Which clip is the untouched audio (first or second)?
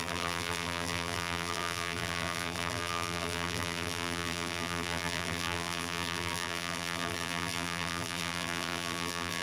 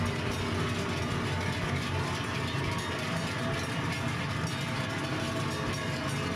second